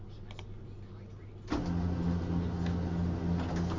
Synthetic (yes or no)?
no